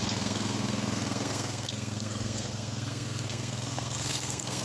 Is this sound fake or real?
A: fake